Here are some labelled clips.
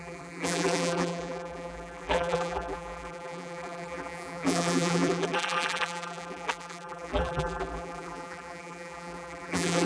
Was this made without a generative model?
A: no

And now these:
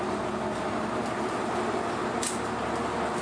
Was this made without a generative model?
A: yes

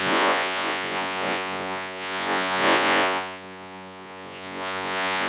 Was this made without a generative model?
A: no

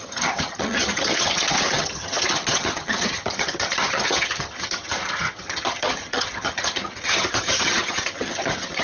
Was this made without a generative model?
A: no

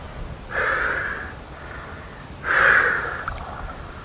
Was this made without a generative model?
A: yes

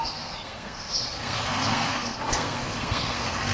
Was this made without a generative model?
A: no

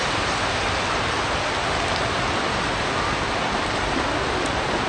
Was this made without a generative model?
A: yes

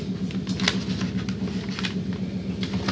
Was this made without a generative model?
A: yes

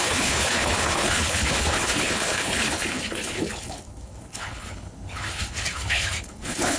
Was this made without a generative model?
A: no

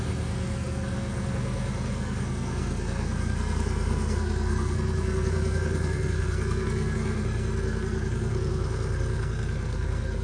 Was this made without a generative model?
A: no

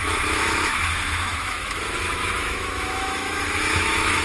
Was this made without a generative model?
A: no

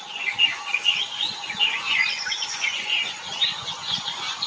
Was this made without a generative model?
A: no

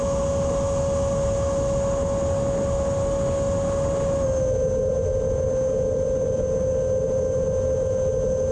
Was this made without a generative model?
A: yes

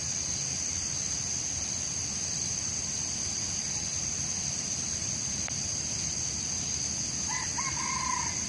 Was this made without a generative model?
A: yes